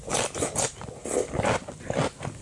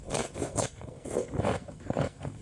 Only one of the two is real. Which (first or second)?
first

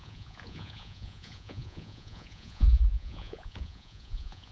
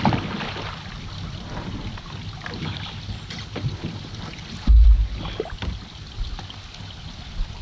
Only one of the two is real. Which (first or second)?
second